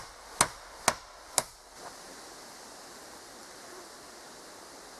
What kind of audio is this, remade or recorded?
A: recorded